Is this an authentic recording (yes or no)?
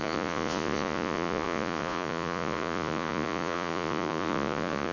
no